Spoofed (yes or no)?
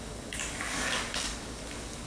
yes